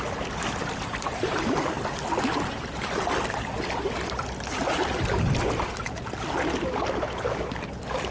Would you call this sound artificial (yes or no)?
no